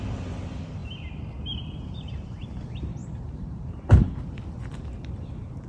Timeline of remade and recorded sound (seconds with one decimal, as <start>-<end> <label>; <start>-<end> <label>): 0.0-3.0 recorded; 3.0-4.2 remade; 4.2-5.7 recorded